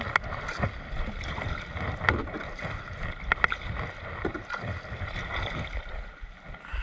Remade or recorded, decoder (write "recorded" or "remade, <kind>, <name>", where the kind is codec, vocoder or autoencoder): recorded